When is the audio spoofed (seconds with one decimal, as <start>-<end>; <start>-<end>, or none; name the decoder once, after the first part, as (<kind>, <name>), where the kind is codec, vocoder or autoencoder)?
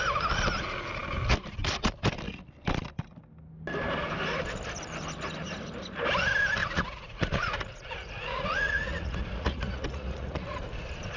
6.6-10.7 (vocoder, Vocos)